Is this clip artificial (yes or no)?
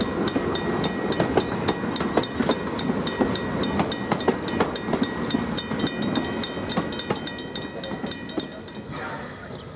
no